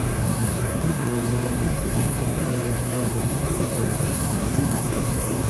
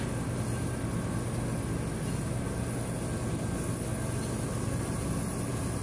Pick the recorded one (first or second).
second